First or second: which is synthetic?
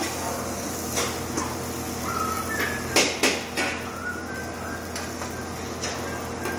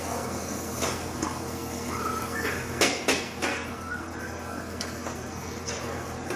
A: second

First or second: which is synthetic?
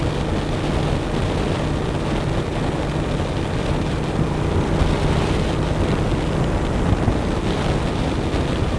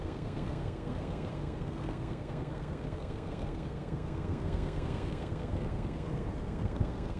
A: second